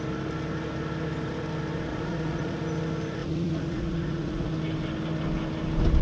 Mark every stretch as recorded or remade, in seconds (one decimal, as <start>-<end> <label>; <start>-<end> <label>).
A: 0.0-1.9 recorded; 1.9-2.6 remade; 2.6-3.2 recorded; 3.2-4.5 remade; 4.5-6.0 recorded